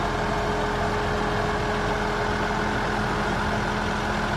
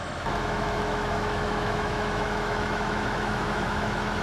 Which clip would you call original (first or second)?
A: first